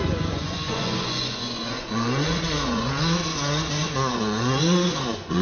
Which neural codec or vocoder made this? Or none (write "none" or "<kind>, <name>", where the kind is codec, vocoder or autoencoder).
vocoder, Vocos